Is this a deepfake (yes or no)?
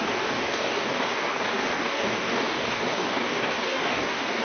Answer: yes